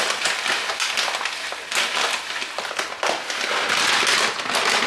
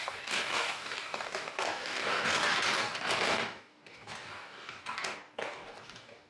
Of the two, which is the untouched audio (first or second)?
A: first